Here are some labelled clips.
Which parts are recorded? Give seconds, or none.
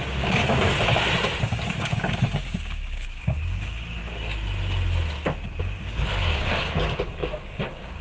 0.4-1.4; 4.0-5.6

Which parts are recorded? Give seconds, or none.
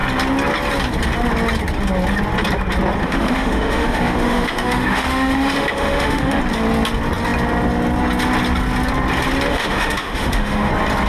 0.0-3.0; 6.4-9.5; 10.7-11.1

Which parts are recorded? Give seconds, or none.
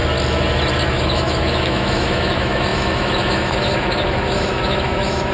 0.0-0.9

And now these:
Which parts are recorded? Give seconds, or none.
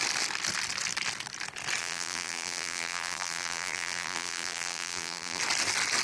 0.0-1.8; 5.4-6.0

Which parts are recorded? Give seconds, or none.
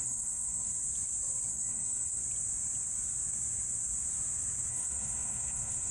0.7-1.5; 2.2-4.7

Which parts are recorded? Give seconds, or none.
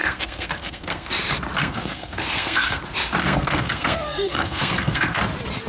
1.1-1.6; 2.8-3.2; 5.2-5.7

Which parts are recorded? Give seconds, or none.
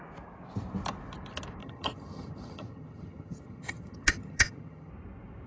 0.0-1.6; 4.9-5.5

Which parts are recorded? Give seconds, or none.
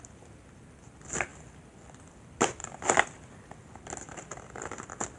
0.0-2.6; 3.3-4.3